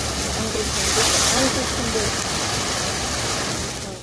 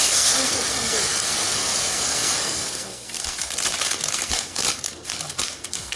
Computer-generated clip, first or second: second